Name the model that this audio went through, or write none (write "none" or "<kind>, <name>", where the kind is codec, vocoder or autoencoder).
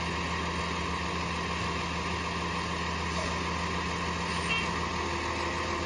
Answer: none